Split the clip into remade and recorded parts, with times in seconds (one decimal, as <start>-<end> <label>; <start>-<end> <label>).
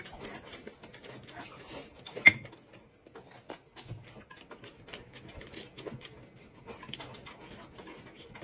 0.0-8.4 recorded